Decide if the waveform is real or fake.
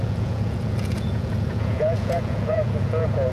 fake